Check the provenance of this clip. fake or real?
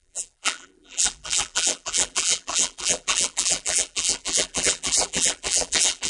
fake